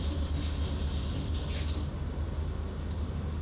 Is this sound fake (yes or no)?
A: no